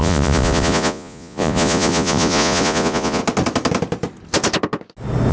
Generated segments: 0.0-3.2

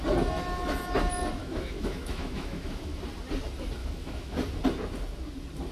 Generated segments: 1.4-3.0; 3.8-4.3

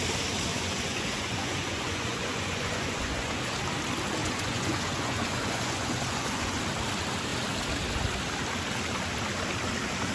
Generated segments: 0.5-3.4; 4.2-6.6

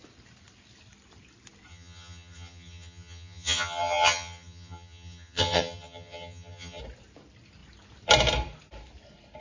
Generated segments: 1.7-6.8

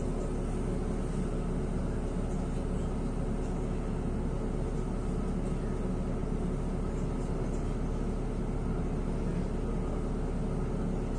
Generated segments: none

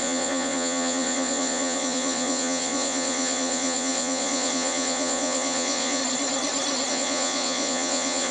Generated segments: 0.0-6.0; 6.9-8.3

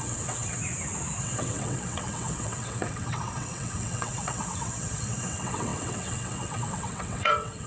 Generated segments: 0.0-0.6; 1.2-7.7